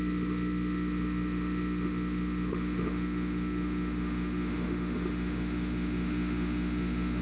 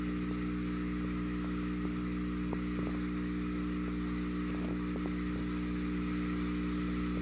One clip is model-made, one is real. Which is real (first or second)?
second